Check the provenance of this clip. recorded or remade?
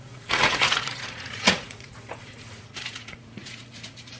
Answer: remade